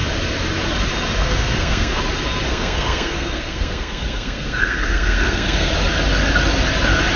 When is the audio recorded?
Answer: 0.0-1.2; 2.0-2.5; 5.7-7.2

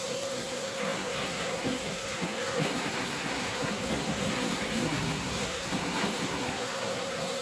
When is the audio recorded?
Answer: none

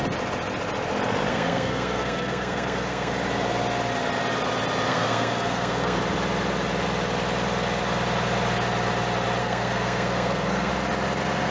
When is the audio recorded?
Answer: 0.0-1.3; 3.1-4.9; 6.0-9.4; 10.7-11.5

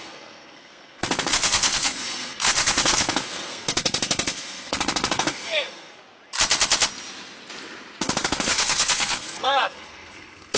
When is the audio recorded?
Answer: 6.0-8.0